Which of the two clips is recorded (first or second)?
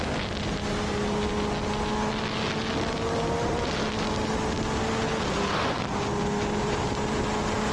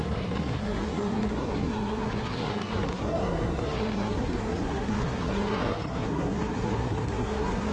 first